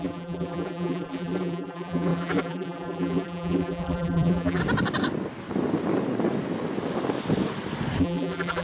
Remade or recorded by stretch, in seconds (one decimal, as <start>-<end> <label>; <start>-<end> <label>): 0.0-4.6 remade; 4.6-8.0 recorded; 8.0-8.6 remade